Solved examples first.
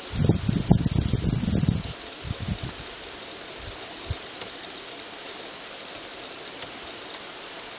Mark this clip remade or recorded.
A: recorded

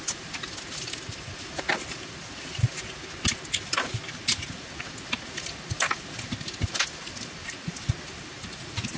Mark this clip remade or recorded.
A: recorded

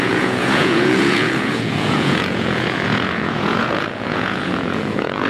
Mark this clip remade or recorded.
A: remade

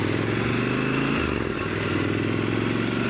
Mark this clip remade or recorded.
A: recorded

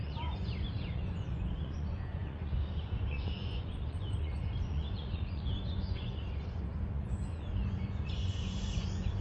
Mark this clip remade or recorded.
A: remade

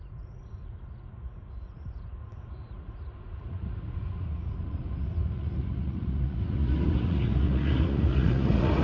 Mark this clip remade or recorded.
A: remade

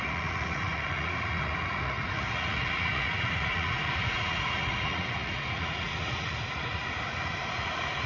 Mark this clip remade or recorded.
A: remade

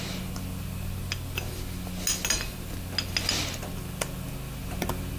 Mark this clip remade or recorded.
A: recorded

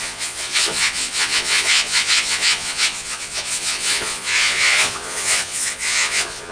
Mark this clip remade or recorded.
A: remade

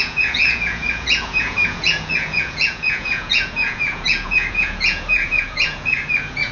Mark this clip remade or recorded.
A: remade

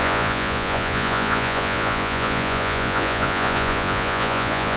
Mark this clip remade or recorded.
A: remade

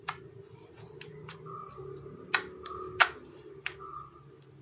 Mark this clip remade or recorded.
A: recorded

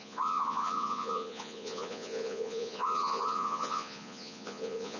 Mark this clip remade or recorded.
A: remade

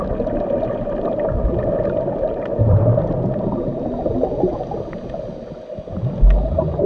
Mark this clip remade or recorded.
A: recorded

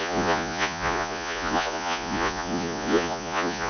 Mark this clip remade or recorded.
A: remade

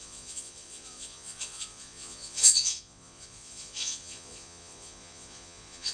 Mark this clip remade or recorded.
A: remade